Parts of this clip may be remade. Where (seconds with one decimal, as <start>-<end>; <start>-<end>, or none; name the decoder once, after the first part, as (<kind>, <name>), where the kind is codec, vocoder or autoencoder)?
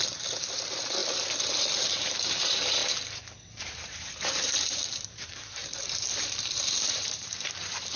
0.0-2.8 (vocoder, BigVGAN v2); 3.6-8.0